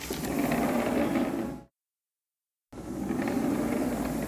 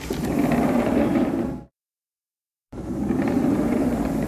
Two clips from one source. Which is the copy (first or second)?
second